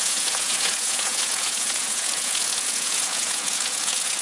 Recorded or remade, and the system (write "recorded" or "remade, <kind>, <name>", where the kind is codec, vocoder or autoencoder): remade, vocoder, Vocos